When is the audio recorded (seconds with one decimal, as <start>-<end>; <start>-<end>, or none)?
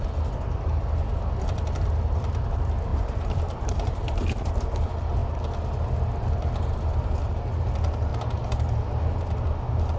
0.0-2.9; 4.5-10.0